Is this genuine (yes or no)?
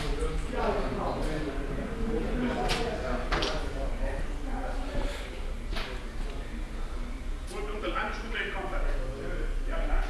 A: yes